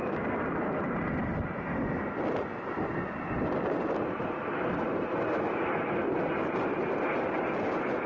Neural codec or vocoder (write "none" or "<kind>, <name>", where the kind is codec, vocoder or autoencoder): none